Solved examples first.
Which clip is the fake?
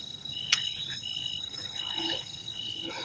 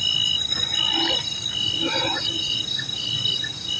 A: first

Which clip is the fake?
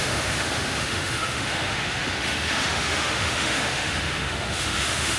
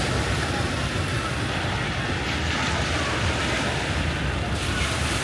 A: first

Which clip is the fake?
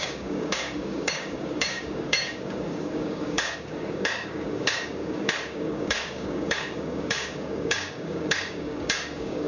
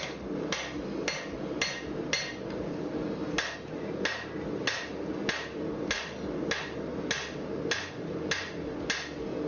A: first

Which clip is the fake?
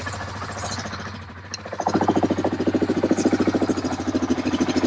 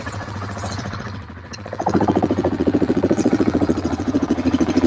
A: second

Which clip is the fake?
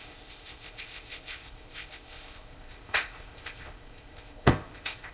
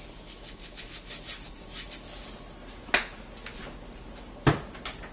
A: first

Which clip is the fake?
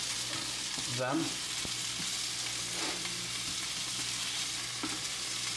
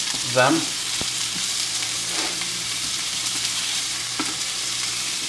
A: second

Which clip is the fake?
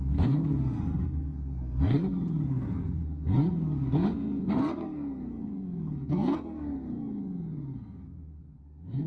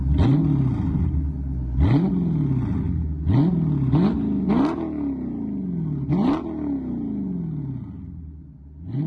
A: first